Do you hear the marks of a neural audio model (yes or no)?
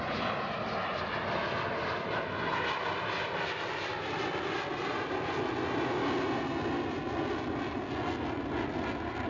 no